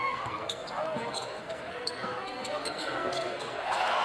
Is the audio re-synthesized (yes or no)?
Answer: yes